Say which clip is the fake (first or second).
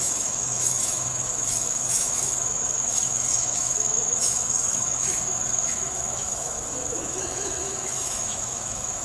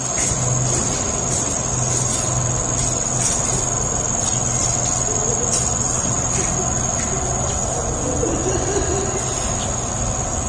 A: first